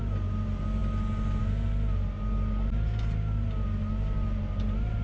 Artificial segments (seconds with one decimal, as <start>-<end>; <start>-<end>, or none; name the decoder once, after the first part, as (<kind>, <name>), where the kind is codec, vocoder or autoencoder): none